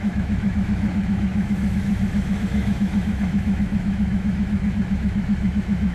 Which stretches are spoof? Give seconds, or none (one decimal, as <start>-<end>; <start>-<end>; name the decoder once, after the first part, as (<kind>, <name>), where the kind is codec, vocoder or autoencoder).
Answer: 0.0-5.9 (autoencoder, DAC-VAE)